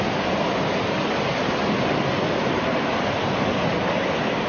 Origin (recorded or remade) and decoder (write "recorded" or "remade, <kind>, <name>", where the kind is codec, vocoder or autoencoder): recorded